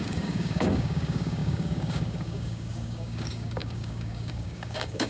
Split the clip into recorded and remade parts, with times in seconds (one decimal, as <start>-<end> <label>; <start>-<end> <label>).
0.0-5.1 remade